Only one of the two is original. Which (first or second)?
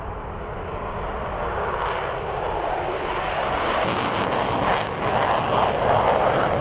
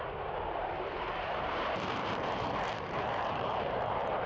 first